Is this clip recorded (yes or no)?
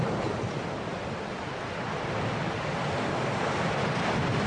yes